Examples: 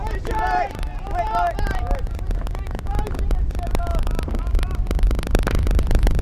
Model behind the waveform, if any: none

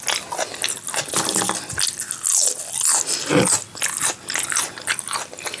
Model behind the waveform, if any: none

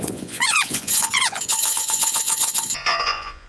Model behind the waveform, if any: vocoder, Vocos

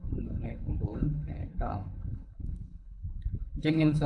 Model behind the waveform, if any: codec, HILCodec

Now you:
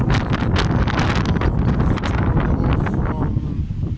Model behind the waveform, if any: none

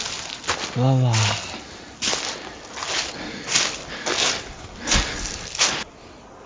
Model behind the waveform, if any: none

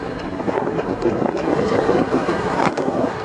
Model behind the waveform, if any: codec, SNAC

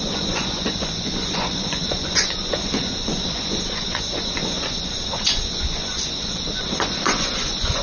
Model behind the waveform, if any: vocoder, Vocos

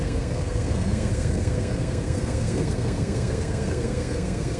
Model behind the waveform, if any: codec, SNAC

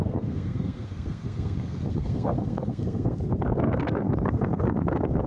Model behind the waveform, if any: codec, SNAC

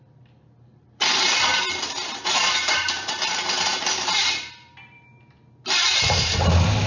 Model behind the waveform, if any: vocoder, BigVGAN v2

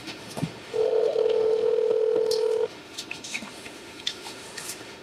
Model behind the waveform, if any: autoencoder, DAC-VAE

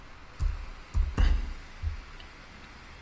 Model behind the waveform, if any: none